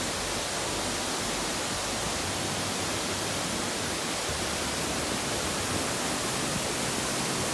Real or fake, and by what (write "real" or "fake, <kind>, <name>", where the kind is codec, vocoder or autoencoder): real